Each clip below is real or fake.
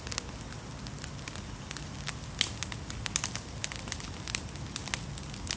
real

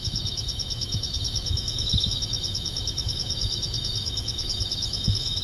fake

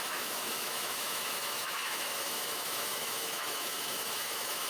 fake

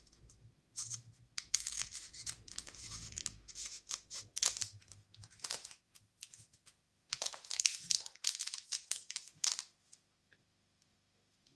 fake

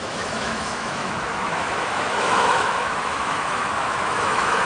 fake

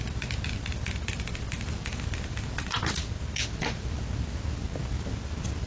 real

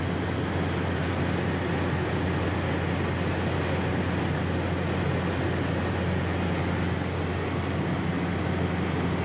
real